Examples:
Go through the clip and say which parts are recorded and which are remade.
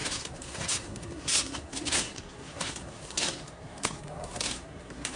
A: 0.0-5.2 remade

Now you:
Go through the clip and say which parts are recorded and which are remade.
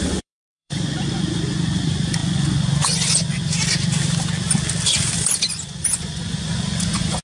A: 0.0-3.5 remade; 3.5-5.2 recorded; 5.2-7.2 remade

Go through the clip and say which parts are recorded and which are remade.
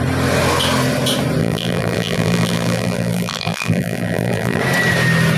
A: 0.0-1.4 recorded; 1.4-4.6 remade; 4.6-5.4 recorded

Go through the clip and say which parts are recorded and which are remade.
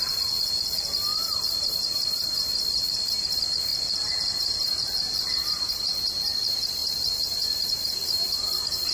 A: 0.0-1.1 recorded; 1.1-2.8 remade; 2.8-6.8 recorded; 6.8-8.3 remade; 8.3-8.9 recorded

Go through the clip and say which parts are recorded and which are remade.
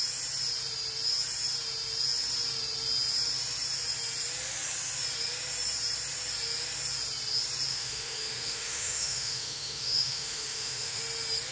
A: 0.0-7.7 recorded; 7.7-11.0 remade; 11.0-11.5 recorded